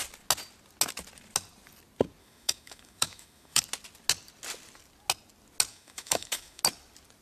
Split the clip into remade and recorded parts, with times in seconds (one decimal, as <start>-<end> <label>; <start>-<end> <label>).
0.0-2.2 recorded; 2.2-3.6 remade; 3.6-5.7 recorded; 5.7-6.6 remade; 6.6-7.2 recorded